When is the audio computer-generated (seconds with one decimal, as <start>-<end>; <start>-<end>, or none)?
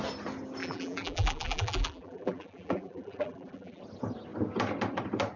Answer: 0.6-3.8